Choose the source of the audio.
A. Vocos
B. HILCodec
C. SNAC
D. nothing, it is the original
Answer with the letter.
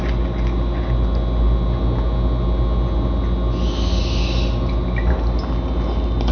D